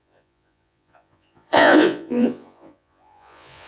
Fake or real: fake